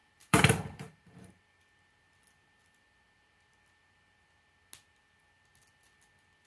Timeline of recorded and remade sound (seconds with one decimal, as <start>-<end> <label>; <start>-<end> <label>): 0.0-1.4 remade; 1.4-6.5 recorded